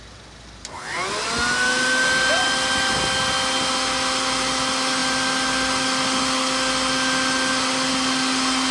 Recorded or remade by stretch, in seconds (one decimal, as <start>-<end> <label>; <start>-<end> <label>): 0.0-8.7 recorded